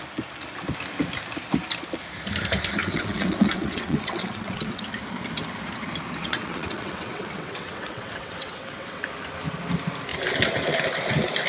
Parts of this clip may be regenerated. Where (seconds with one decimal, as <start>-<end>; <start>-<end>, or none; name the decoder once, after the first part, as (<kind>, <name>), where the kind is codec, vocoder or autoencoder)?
2.8-4.8 (vocoder, WaveNeXt); 6.2-9.0